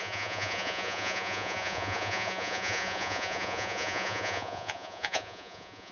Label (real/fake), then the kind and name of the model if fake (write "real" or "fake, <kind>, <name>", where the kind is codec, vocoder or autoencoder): fake, vocoder, Vocos